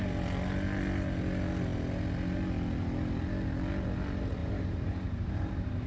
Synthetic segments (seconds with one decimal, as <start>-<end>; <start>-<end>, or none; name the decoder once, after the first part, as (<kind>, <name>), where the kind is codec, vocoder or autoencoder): 4.4-5.9 (vocoder, BigVGAN v2)